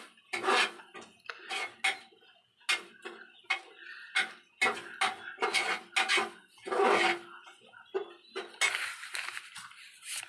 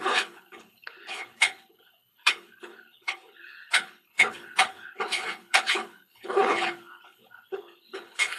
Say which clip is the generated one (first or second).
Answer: second